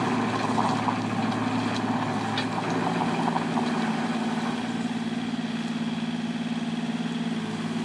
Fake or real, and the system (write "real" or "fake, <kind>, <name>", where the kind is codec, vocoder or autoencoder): real